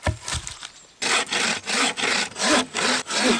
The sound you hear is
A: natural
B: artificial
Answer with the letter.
A